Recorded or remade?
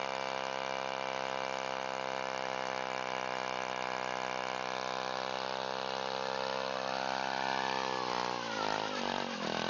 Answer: recorded